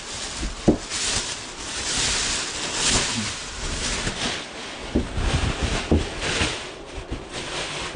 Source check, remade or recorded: recorded